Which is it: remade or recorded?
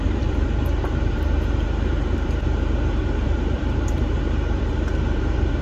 remade